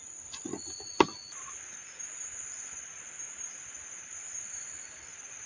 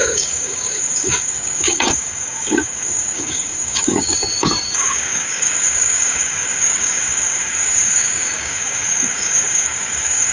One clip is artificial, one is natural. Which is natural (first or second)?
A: first